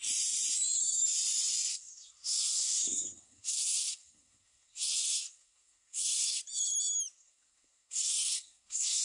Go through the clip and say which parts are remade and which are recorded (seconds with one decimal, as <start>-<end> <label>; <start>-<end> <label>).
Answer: 0.0-1.7 recorded; 1.7-6.4 remade; 6.4-7.1 recorded; 7.1-9.0 remade

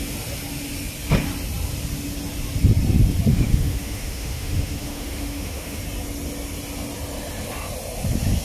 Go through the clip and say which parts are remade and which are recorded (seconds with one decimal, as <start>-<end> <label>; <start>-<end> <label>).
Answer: 0.0-3.3 recorded; 3.3-5.8 remade; 5.8-8.4 recorded

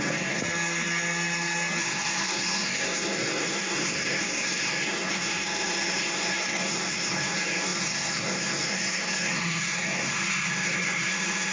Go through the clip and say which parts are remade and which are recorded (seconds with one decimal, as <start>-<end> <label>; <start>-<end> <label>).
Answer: 0.0-0.4 remade; 0.4-1.8 recorded; 1.8-11.5 remade

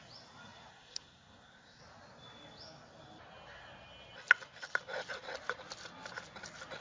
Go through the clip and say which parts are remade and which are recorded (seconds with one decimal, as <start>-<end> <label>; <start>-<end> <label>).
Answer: 0.0-0.7 recorded; 0.7-1.8 remade; 1.8-6.8 recorded

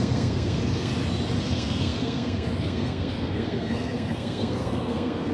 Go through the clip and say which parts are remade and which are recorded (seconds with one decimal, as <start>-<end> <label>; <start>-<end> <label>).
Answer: 0.0-0.9 remade; 0.9-1.4 recorded; 1.4-5.3 remade

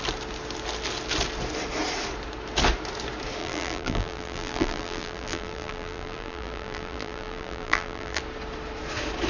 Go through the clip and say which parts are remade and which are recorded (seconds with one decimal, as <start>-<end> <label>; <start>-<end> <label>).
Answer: 0.0-3.4 recorded; 3.4-8.2 remade; 8.2-9.3 recorded